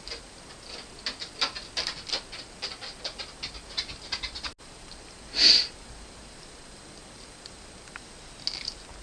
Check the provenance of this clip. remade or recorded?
recorded